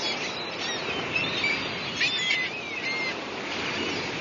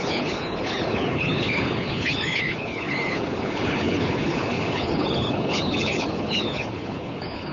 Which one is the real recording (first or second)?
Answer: first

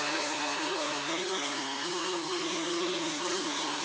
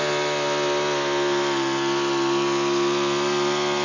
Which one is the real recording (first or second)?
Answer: second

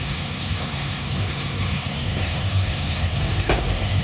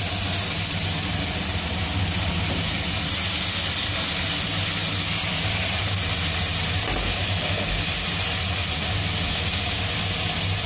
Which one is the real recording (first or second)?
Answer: second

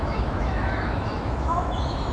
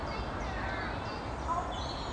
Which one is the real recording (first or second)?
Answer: second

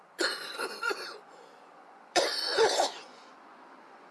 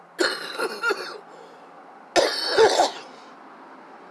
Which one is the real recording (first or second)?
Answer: second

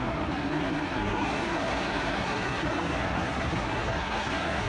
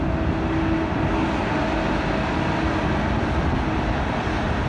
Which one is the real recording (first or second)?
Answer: second